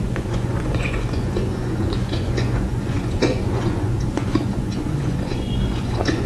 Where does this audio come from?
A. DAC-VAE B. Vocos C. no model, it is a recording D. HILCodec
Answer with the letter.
B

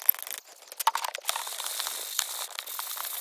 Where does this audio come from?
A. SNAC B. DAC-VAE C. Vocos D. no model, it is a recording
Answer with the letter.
D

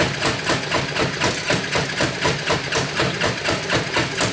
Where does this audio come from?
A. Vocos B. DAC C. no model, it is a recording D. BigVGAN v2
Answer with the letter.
C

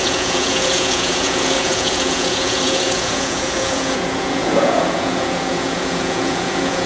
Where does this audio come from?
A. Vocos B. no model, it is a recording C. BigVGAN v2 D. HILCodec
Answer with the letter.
A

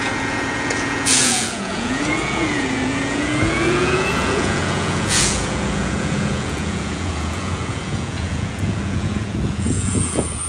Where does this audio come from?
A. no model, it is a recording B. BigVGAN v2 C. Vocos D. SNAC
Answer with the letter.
C